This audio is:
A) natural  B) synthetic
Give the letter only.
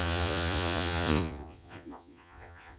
B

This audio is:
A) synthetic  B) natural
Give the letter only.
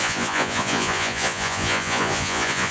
A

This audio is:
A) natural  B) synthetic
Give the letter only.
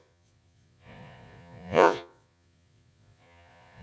B